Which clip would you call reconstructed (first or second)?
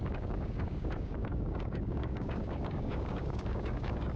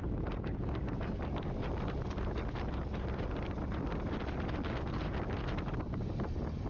first